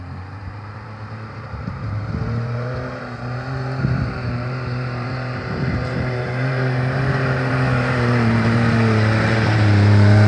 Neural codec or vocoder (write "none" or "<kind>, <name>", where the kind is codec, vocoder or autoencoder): vocoder, BigVGAN v2